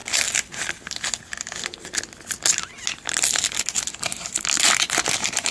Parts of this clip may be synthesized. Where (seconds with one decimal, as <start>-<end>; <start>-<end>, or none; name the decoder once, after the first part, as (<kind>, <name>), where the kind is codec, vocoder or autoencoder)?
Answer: none

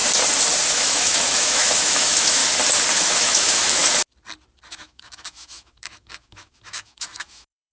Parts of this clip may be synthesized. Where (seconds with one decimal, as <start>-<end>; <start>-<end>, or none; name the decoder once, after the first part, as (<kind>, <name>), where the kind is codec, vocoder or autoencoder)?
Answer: 0.7-2.4 (autoencoder, DAC-VAE); 3.0-3.8; 4.7-7.7